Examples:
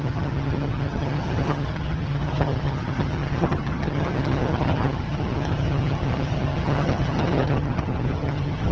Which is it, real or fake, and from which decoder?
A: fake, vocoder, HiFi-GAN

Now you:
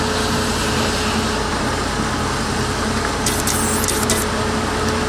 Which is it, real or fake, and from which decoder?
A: real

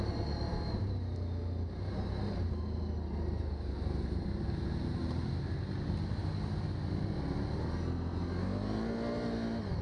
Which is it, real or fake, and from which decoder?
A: real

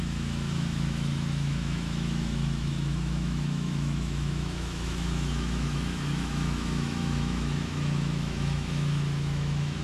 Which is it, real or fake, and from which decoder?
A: fake, autoencoder, DAC-VAE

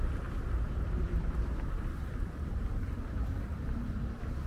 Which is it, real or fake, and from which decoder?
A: fake, vocoder, BigVGAN v2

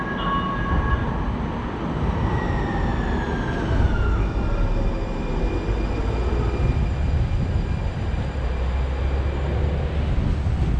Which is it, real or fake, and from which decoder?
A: real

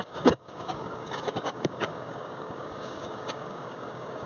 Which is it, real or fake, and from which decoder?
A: fake, codec, DAC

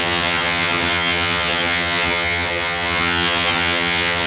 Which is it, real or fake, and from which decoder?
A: fake, vocoder, HiFi-GAN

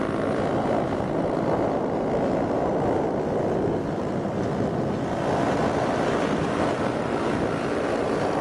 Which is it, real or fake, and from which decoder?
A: real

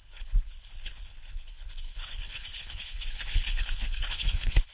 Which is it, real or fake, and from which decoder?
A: fake, codec, HILCodec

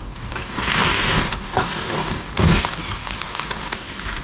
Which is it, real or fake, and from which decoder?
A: fake, codec, DAC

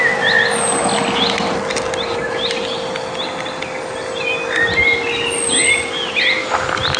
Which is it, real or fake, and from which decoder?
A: real